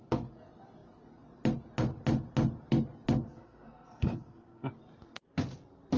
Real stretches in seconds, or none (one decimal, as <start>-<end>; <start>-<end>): 0.0-3.3; 4.7-6.0